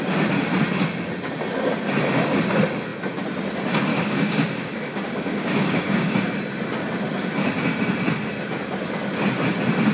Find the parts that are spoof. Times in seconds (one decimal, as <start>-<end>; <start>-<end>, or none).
3.9-6.1

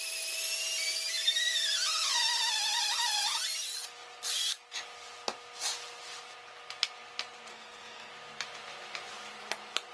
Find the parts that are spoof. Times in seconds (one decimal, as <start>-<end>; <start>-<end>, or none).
7.5-8.1